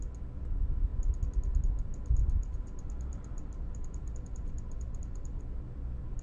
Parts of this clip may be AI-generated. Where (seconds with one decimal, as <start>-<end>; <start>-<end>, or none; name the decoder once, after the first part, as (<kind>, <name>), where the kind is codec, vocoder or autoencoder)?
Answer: 2.2-5.4 (vocoder, BigVGAN v2)